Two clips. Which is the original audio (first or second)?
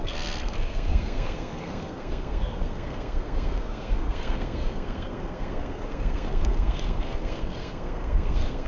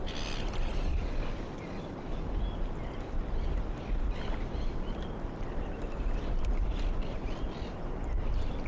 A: second